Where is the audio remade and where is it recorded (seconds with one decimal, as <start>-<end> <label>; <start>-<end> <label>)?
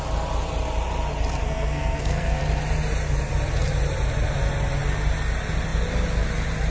0.0-1.4 recorded; 1.4-2.4 remade; 2.4-6.7 recorded